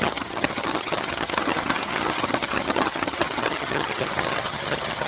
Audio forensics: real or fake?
fake